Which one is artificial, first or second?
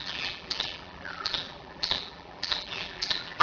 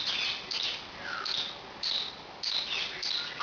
first